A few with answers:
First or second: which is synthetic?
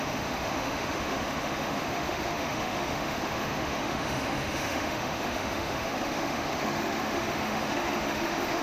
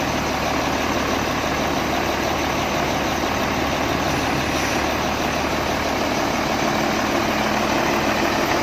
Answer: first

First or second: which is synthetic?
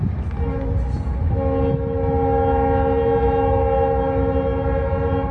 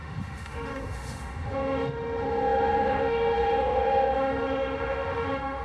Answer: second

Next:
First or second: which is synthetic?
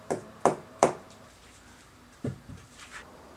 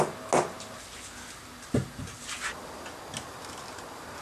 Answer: first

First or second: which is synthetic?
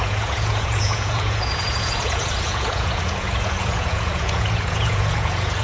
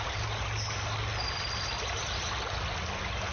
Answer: first